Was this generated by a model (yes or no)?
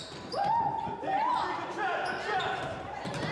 yes